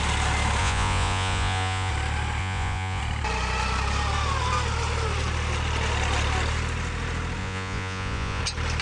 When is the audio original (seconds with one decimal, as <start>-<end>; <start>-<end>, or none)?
0.0-0.6; 1.9-2.4; 3.0-7.4; 8.4-8.8